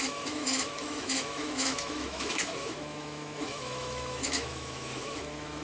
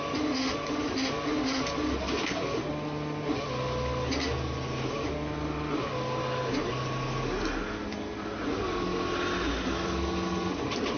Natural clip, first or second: second